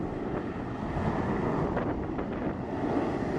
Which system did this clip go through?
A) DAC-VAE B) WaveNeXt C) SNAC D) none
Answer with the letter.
D